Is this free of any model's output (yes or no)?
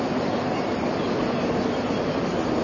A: yes